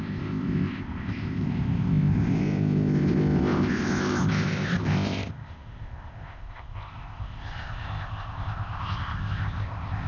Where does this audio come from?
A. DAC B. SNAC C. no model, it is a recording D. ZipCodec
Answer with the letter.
D